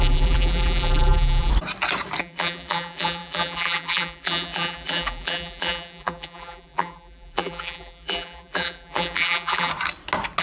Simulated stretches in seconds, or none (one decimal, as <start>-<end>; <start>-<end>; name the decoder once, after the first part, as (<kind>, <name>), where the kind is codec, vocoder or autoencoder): 0.0-1.5 (vocoder, BigVGAN v2); 2.2-9.7